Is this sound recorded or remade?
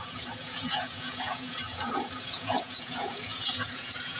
remade